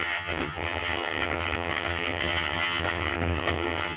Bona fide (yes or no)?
no